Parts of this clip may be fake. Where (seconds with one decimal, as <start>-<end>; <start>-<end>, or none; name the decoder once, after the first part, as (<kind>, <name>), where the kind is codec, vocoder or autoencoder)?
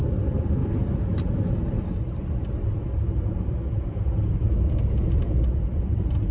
none